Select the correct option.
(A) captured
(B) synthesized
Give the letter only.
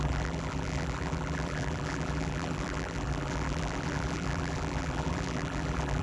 B